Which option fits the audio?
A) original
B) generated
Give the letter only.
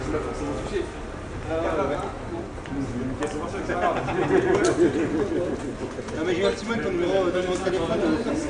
A